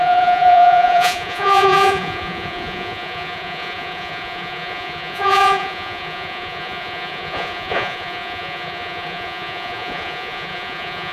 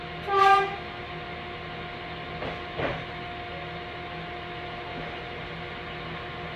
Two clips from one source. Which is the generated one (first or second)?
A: first